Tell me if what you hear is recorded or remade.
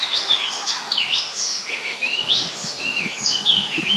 remade